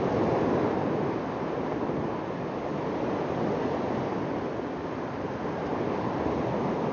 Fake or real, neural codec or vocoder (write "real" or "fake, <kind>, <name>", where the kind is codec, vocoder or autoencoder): real